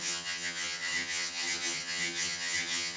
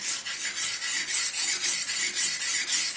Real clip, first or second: second